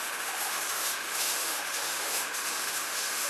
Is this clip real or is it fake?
fake